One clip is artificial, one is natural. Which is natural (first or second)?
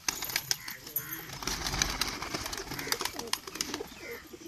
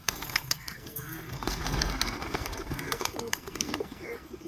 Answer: first